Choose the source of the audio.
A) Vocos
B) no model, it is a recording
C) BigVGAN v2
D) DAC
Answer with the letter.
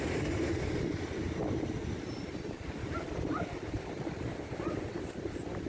C